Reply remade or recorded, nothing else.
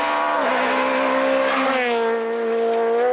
recorded